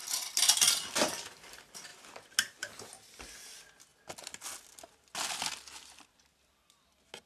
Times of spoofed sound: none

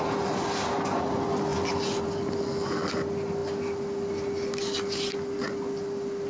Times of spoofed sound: none

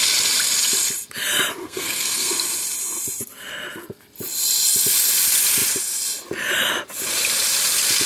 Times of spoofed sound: 1.6-2.3 (codec, SNAC)